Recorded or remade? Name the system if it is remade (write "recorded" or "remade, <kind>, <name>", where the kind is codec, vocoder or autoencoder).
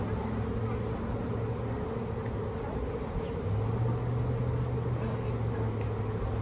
recorded